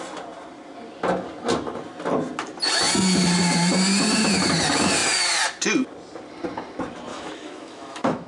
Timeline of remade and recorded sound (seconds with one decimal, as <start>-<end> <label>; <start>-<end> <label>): 0.0-7.1 recorded; 7.1-8.3 remade